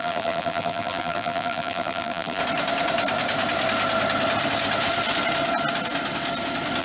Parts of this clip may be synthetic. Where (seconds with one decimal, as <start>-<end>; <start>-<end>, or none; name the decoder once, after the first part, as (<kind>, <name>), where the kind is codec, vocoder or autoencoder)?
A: 0.0-2.4 (vocoder, BigVGAN v2)